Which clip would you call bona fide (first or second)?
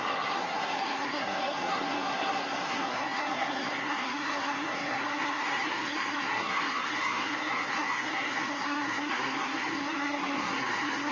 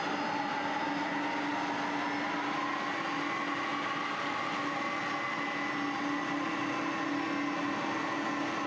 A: second